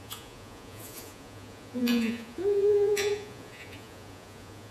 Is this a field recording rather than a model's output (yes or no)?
no